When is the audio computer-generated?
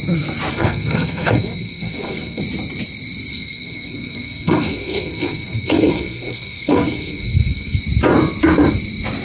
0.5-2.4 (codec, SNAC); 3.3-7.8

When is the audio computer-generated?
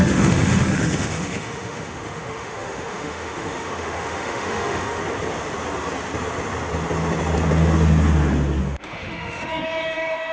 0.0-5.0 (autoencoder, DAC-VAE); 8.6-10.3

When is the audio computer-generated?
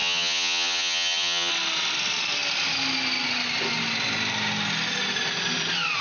0.0-1.5 (vocoder, HiFi-GAN)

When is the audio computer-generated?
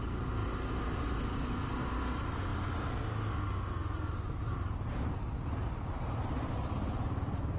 none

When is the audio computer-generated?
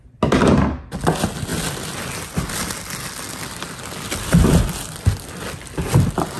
none